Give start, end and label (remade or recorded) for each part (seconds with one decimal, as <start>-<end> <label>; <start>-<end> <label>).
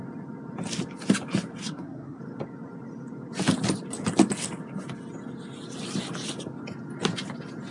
0.0-1.6 recorded; 1.6-2.2 remade; 2.2-7.7 recorded